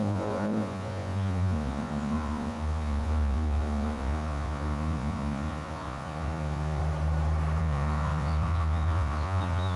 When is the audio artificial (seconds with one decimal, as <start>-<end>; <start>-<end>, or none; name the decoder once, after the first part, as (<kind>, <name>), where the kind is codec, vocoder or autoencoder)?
0.0-6.8 (vocoder, Vocos); 7.6-9.8